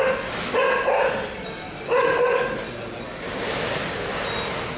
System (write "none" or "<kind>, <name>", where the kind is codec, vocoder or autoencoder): none